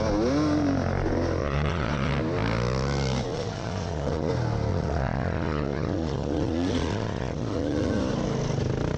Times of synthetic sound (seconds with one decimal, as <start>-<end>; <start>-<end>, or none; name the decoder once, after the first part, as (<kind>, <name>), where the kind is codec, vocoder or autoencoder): 1.4-2.1 (vocoder, Vocos); 3.3-4.3; 4.7-8.0